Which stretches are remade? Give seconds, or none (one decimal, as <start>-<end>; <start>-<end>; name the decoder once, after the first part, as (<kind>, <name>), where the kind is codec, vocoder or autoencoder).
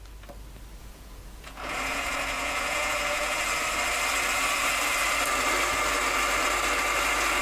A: 0.8-3.4 (vocoder, Vocos)